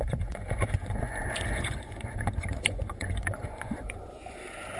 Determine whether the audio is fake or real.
fake